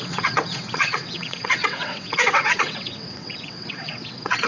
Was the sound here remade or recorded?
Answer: remade